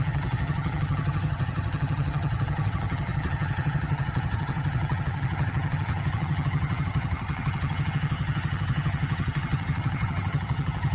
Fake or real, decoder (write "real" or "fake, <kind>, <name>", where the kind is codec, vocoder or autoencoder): fake, vocoder, HiFi-GAN